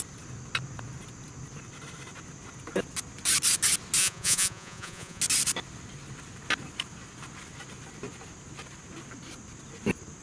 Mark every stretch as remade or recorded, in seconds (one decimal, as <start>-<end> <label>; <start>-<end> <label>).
0.0-4.0 recorded; 4.0-5.2 remade; 5.2-10.2 recorded